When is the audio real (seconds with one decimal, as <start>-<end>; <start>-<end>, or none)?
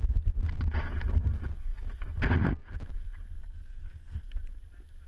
0.0-3.4; 4.3-5.1